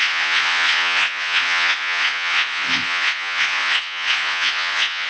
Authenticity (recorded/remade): remade